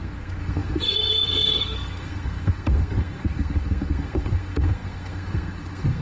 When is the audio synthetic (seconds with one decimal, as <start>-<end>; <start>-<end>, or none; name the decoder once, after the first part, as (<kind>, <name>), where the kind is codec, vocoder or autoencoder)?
0.0-6.0 (codec, SNAC)